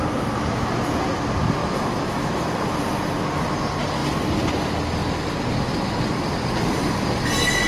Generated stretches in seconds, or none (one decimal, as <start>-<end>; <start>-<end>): 1.6-2.3